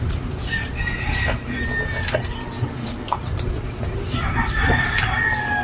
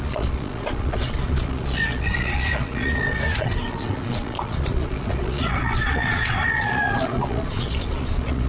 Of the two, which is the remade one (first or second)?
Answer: second